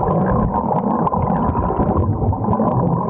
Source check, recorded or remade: recorded